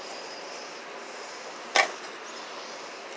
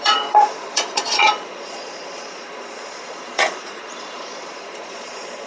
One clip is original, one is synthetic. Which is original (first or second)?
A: first